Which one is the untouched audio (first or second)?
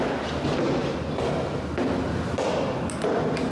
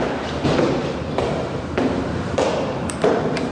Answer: first